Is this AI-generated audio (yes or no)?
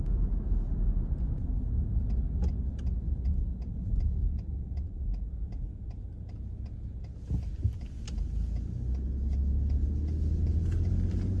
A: no